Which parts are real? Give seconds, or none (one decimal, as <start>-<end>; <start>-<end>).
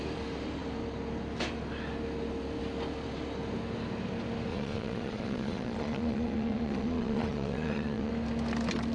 0.0-4.5; 8.1-8.9